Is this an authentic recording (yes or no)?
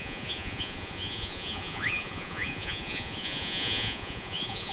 no